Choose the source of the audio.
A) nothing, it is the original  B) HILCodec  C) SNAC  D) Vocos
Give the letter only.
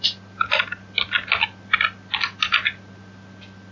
A